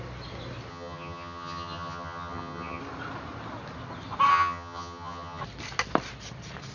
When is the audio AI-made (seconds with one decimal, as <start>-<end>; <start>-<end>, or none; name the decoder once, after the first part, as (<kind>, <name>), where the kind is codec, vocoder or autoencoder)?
0.7-2.8 (vocoder, HiFi-GAN); 4.3-5.4